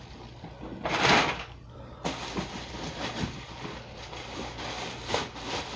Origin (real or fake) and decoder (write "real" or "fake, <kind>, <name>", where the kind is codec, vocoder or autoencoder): real